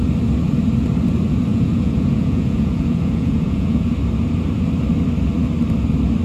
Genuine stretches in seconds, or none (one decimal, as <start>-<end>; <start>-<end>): 0.0-1.5; 3.9-6.2